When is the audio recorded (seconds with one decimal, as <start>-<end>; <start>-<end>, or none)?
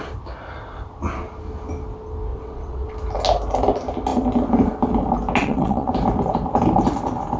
0.0-2.3; 2.9-5.4; 5.9-7.4